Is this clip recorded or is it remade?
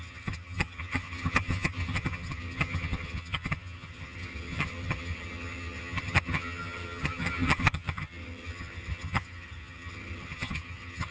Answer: remade